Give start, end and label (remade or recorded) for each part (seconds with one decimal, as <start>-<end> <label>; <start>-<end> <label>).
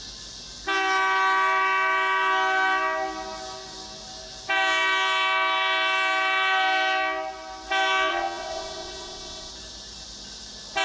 0.0-8.1 recorded; 8.1-9.5 remade; 9.5-10.8 recorded